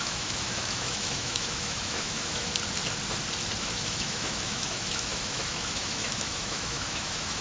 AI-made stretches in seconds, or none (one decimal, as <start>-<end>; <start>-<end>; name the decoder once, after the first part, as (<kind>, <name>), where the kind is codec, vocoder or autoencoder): 0.0-2.5 (autoencoder, DAC-VAE); 3.6-7.4